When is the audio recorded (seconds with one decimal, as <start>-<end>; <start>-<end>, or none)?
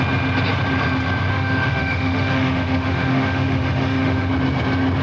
0.0-1.3; 4.3-5.0